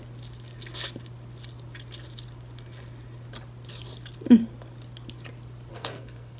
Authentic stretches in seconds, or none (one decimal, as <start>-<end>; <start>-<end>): 0.0-5.7